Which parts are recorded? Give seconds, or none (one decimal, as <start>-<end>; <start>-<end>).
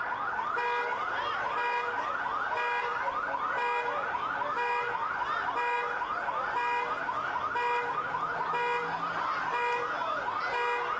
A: 0.0-11.0